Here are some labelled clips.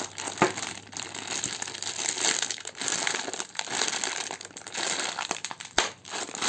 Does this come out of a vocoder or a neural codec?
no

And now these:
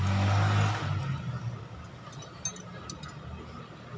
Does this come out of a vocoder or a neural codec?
no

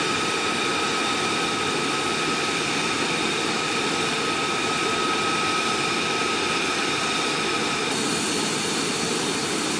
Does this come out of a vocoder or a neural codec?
no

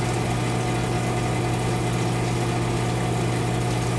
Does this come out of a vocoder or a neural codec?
no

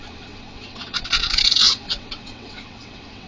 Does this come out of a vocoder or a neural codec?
yes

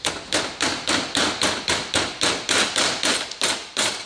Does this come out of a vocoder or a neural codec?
no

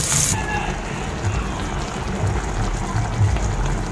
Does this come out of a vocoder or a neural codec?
no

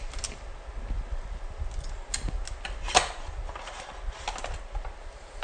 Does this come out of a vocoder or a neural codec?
no